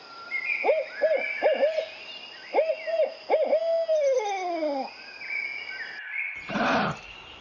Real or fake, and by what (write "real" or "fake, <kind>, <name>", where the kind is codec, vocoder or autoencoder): real